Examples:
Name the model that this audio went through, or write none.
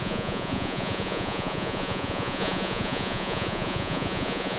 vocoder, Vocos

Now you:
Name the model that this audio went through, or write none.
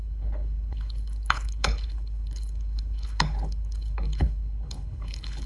codec, HILCodec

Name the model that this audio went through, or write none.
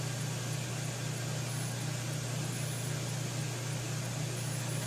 none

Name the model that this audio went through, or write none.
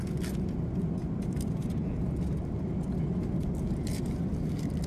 none